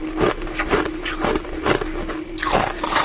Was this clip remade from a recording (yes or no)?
no